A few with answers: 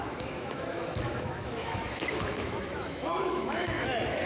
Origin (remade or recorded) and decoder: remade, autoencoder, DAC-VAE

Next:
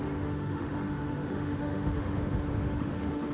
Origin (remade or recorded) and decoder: remade, autoencoder, DAC-VAE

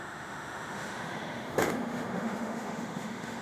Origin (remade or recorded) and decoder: remade, autoencoder, DAC-VAE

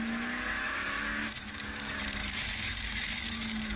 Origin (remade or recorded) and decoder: remade, autoencoder, DAC-VAE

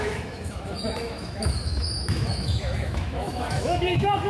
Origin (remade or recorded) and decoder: remade, autoencoder, DAC-VAE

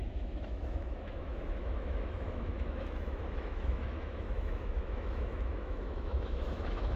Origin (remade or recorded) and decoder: remade, autoencoder, DAC-VAE